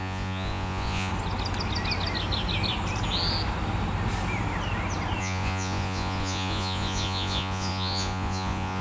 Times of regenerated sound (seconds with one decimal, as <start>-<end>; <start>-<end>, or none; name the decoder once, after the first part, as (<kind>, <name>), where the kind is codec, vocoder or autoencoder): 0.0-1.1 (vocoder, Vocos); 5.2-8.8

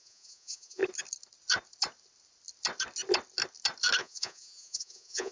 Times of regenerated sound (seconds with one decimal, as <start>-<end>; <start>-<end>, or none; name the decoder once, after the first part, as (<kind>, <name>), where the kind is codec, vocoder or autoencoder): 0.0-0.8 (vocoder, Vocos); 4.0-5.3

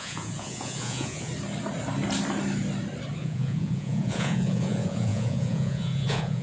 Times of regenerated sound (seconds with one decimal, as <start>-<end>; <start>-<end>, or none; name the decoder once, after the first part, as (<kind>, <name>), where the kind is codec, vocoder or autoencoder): 0.0-1.3 (vocoder, Vocos); 3.2-6.4

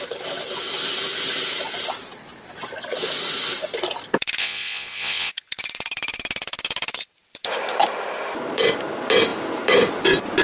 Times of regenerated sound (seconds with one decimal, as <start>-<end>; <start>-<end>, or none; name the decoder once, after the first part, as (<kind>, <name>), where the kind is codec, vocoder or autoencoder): 4.4-5.3 (vocoder, Vocos)